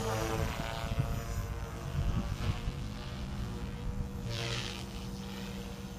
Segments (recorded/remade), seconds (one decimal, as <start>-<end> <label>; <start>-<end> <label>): 0.0-1.4 recorded; 1.4-5.0 remade; 5.0-6.0 recorded